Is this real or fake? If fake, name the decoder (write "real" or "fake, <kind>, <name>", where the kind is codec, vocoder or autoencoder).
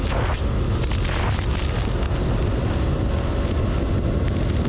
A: real